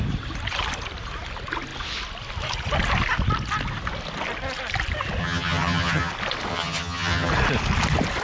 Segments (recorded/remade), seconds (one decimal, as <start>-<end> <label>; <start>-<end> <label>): 0.0-5.2 recorded; 5.2-6.1 remade; 6.1-6.5 recorded; 6.5-7.3 remade; 7.3-8.2 recorded